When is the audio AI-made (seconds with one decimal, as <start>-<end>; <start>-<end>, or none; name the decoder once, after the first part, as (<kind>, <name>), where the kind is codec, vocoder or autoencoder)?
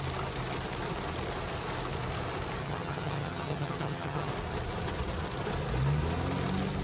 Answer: 2.6-4.3 (vocoder, HiFi-GAN)